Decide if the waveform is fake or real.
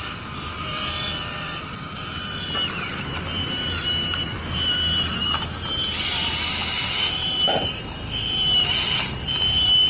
real